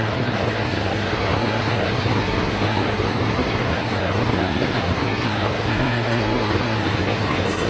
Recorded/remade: remade